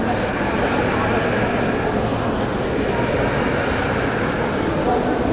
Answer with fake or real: real